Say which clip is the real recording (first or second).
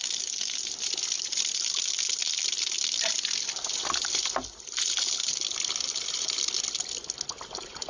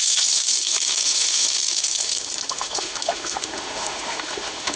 first